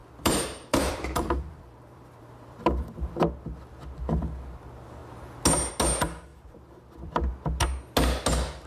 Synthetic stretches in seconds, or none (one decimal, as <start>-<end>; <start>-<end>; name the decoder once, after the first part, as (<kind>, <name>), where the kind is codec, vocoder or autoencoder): 0.0-3.2 (vocoder, BigVGAN v2); 6.3-7.3